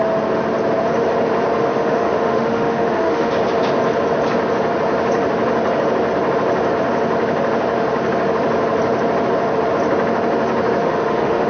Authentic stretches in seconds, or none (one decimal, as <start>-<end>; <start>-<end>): 0.0-1.6; 3.3-10.8